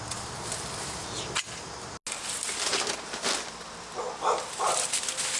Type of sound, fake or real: real